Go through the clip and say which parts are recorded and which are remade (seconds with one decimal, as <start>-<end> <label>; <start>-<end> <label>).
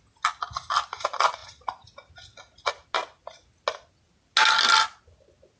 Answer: 0.0-5.6 recorded